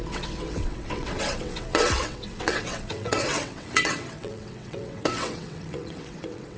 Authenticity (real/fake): fake